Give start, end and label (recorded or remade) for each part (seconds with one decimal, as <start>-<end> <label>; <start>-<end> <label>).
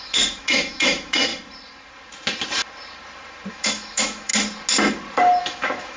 0.0-1.3 remade; 1.3-3.5 recorded; 3.5-4.3 remade; 4.3-5.4 recorded; 5.4-6.0 remade